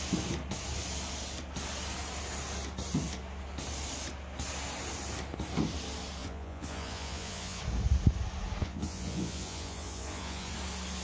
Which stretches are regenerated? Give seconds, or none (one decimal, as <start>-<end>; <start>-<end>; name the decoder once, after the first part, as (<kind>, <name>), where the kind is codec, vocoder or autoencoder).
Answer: 6.2-7.6 (vocoder, Vocos); 8.6-10.5